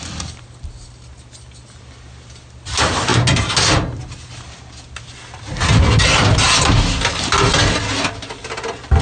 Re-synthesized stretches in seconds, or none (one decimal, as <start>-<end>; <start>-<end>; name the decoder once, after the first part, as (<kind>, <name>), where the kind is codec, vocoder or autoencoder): none